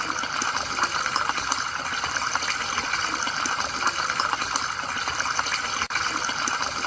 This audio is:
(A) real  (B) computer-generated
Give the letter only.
A